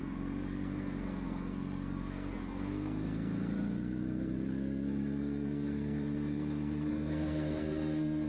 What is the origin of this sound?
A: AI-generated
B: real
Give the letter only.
A